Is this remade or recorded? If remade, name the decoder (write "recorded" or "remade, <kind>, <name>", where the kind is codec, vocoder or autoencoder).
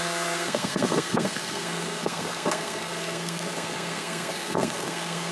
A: remade, codec, SNAC